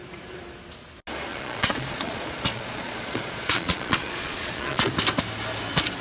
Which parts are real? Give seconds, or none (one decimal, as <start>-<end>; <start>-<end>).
0.0-1.3; 4.9-6.0